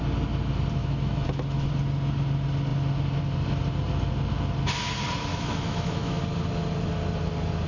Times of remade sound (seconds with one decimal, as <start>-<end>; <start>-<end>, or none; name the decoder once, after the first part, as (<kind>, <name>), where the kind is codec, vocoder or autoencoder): 0.8-1.7 (autoencoder, DAC-VAE); 5.3-6.2